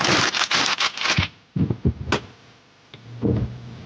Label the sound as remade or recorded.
recorded